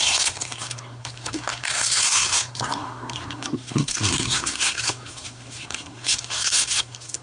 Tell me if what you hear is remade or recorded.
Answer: remade